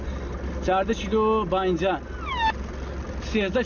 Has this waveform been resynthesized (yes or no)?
no